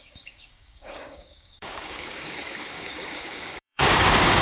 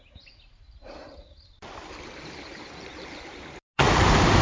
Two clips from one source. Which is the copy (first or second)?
first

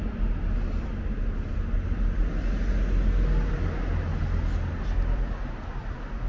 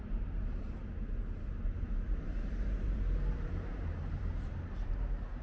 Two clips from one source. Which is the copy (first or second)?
second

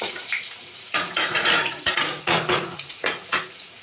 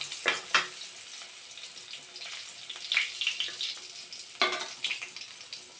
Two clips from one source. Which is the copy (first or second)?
first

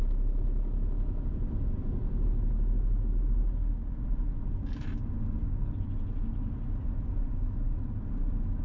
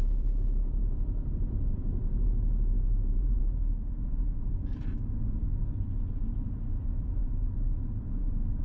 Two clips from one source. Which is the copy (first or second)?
second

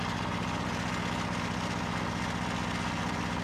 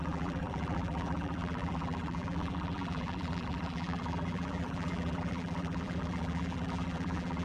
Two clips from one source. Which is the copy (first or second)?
second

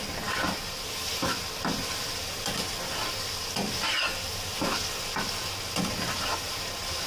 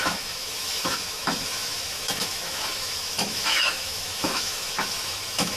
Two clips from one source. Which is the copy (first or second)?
second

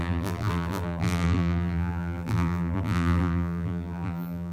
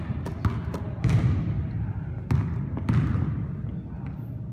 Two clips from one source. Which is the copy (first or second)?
first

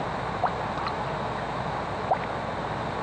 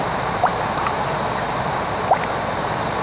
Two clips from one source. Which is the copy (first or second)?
second